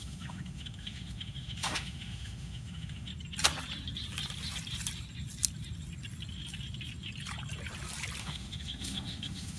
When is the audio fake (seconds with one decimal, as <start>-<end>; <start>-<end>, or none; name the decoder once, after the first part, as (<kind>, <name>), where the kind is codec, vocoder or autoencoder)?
0.0-3.1 (autoencoder, DAC-VAE); 8.2-9.6